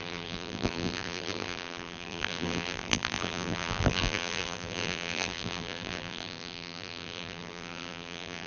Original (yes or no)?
no